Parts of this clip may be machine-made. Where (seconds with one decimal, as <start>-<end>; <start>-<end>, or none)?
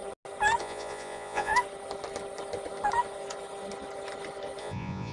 0.6-1.5; 4.6-5.1